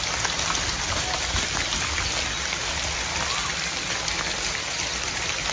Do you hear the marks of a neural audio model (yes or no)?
no